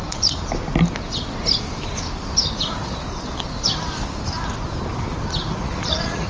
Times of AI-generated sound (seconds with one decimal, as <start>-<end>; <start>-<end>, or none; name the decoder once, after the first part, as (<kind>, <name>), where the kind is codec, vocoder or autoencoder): 5.4-6.3 (vocoder, Vocos)